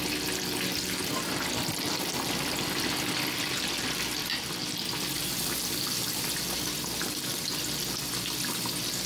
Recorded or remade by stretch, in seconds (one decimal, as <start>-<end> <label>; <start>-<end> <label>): 0.0-9.1 recorded